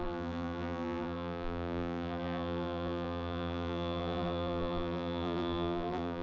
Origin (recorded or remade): remade